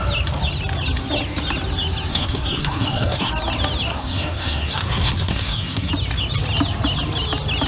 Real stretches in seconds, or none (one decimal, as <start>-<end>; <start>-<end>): 0.0-2.1; 3.3-3.9; 5.9-7.7